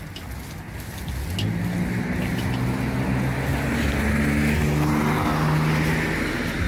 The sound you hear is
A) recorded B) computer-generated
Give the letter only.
A